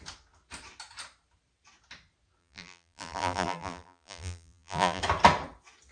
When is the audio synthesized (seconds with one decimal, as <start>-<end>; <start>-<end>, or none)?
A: 2.4-5.0